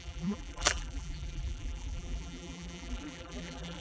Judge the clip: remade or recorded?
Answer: remade